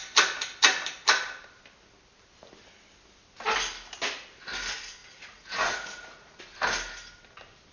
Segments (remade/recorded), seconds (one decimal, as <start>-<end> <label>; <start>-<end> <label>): 0.0-5.0 recorded; 5.0-6.4 remade; 6.4-7.7 recorded